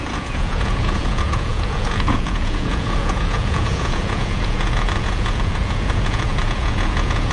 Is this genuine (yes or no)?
no